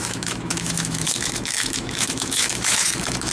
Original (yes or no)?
no